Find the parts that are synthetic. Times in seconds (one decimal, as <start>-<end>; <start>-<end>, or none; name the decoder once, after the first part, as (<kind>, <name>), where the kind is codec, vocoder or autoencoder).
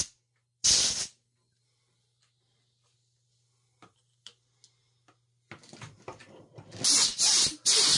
none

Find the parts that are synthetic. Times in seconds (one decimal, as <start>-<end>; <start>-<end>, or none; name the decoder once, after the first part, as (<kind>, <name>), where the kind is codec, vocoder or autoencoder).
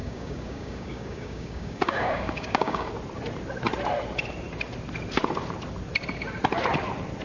0.0-2.9 (codec, DAC)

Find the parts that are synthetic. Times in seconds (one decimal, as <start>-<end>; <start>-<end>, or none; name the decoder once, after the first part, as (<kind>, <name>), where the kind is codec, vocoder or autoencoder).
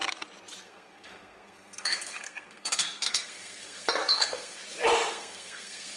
0.6-4.6 (codec, SNAC); 5.1-6.0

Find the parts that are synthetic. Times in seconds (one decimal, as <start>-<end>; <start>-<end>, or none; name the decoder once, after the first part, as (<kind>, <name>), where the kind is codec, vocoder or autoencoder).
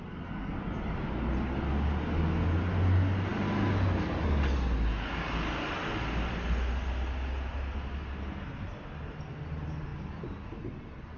none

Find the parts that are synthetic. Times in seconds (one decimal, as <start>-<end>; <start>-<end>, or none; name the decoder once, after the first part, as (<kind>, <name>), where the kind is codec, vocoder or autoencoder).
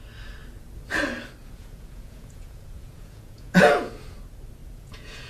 1.4-3.9 (vocoder, Vocos); 4.6-5.3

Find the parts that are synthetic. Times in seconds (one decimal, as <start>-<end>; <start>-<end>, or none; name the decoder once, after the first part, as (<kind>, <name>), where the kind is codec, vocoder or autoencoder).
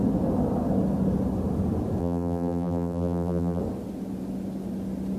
2.0-3.6 (vocoder, BigVGAN v2)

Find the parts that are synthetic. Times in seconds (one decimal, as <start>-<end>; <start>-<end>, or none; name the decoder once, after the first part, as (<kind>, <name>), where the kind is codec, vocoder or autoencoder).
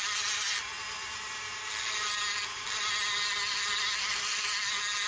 none